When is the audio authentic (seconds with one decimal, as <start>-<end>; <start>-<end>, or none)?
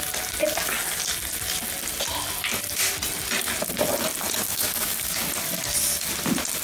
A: 0.0-4.5; 5.2-6.6